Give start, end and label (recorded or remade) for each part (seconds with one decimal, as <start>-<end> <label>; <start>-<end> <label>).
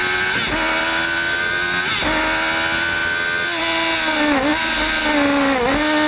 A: 0.0-6.1 recorded